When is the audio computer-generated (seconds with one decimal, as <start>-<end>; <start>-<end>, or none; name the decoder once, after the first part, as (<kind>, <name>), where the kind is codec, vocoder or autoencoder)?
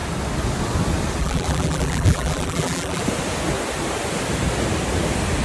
1.2-3.0 (vocoder, BigVGAN v2)